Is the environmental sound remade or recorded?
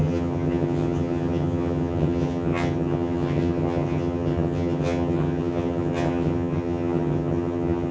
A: remade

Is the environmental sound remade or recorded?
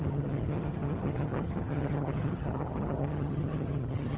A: remade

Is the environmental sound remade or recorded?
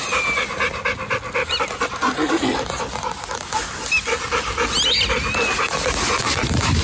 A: recorded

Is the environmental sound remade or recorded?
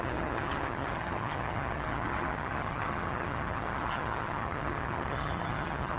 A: remade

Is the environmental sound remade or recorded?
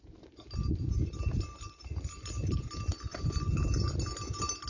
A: recorded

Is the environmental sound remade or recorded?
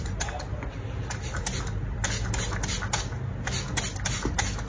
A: recorded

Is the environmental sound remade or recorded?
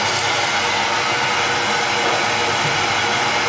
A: recorded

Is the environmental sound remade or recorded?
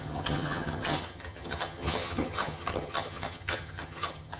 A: remade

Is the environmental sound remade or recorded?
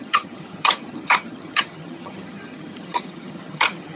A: remade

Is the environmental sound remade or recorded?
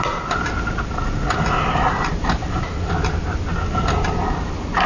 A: recorded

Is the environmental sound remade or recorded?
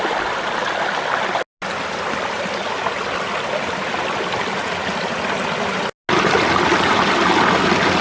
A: recorded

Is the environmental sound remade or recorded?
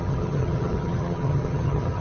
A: remade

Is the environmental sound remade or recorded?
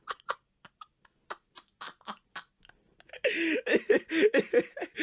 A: recorded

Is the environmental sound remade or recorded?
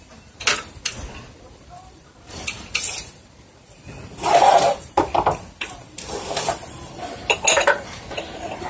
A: recorded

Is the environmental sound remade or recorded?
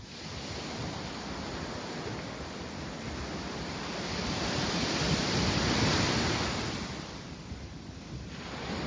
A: recorded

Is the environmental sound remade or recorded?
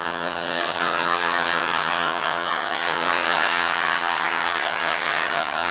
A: remade